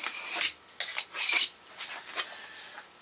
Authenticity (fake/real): real